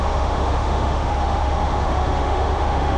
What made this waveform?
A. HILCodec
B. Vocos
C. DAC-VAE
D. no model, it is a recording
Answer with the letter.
C